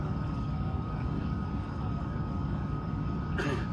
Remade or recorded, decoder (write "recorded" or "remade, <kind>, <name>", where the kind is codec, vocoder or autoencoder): remade, codec, DAC